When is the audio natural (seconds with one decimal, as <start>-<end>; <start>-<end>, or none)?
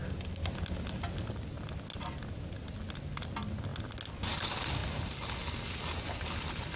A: 0.0-4.8; 5.3-6.8